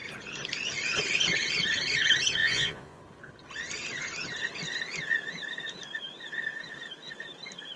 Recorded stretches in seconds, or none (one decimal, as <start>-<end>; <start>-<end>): 0.0-2.4; 3.0-7.8